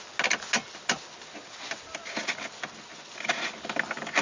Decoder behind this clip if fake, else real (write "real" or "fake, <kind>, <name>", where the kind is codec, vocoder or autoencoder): real